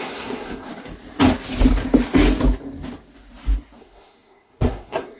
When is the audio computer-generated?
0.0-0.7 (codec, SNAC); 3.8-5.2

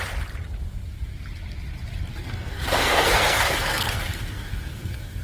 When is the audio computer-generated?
2.1-5.2 (codec, SNAC)

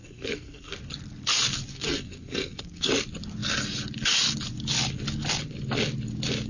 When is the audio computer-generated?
0.0-0.8 (codec, SNAC); 1.7-2.9

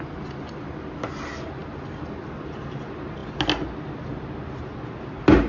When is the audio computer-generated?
none